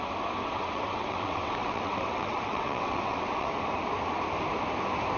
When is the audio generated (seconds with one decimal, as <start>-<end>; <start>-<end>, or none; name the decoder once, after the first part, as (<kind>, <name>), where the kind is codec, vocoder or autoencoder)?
0.4-3.5 (vocoder, WaveNeXt)